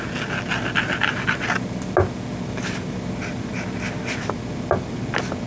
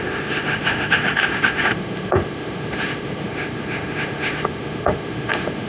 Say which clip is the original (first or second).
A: first